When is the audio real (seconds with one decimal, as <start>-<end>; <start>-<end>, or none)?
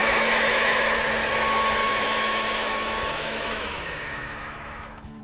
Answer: 1.1-1.8